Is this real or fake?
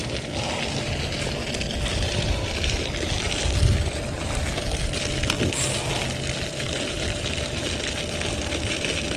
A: real